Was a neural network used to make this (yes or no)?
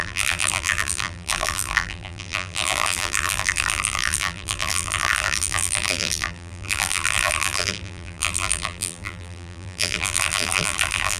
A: yes